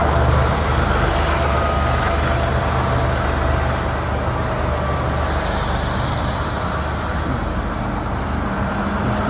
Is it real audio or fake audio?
real